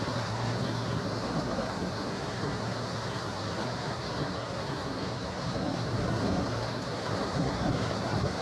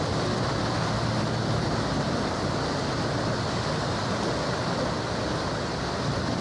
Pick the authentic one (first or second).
second